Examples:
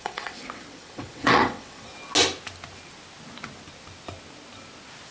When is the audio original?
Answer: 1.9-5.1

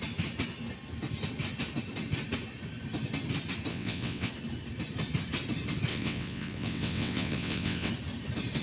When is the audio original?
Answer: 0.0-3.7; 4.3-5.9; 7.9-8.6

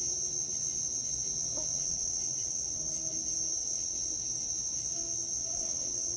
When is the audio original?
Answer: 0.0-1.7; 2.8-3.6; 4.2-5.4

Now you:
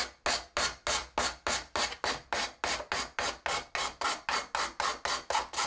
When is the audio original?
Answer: 0.0-5.7

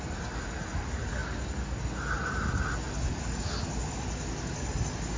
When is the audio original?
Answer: 0.0-5.2